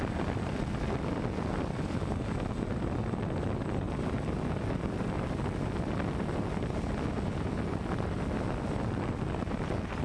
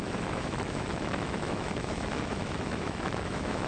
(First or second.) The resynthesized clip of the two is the second